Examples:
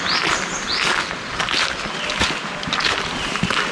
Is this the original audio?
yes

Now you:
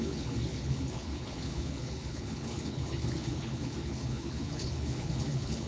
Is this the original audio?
no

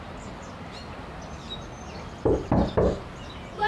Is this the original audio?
yes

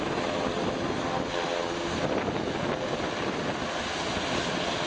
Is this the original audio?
yes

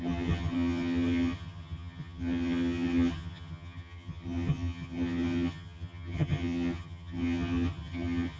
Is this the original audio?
no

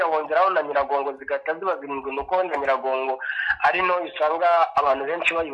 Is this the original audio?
yes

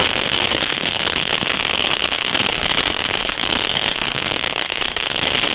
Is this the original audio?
no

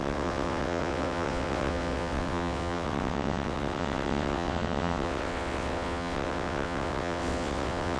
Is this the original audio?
no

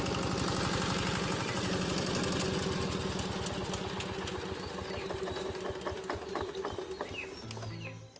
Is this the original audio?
yes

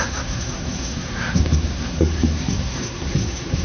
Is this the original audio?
no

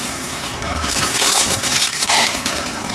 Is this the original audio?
no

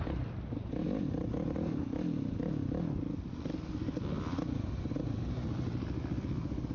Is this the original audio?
yes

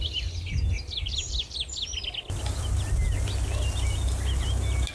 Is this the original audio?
yes